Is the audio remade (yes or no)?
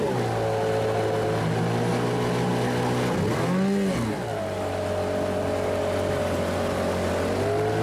no